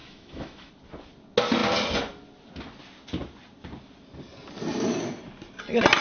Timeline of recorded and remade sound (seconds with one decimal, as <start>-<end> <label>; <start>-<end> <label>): 0.0-0.7 remade; 0.7-6.0 recorded